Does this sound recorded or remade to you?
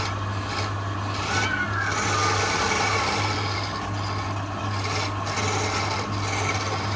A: recorded